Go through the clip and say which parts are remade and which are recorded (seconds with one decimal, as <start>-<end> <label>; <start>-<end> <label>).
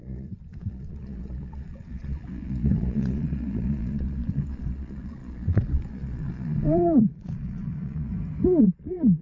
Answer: 0.0-8.1 remade; 8.1-8.6 recorded; 8.6-9.2 remade